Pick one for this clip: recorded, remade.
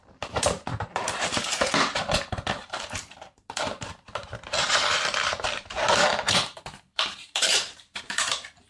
remade